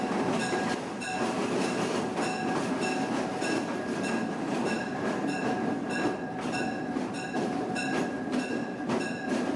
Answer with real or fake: real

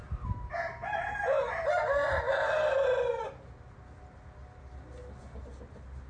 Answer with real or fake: real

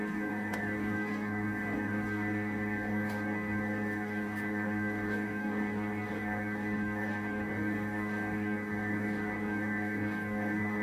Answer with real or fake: fake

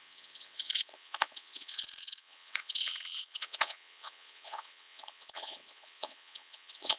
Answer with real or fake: fake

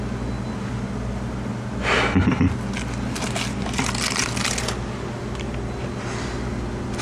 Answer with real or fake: real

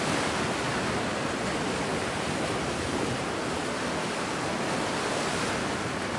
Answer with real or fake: real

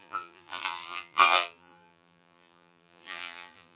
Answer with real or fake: fake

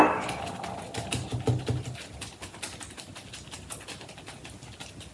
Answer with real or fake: real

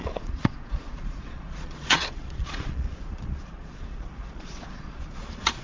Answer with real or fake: fake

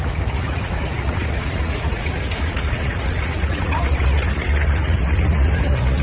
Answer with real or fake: fake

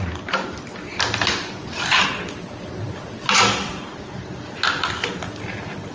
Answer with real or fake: real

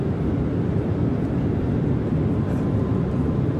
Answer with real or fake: real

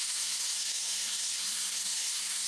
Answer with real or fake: fake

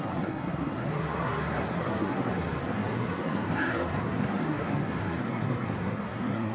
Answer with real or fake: fake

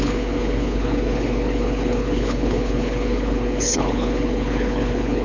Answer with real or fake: fake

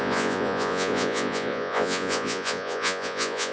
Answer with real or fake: fake